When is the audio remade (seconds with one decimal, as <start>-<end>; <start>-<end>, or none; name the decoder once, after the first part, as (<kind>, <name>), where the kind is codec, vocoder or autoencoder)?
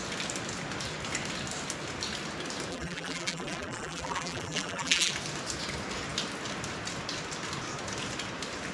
2.7-5.1 (vocoder, BigVGAN v2)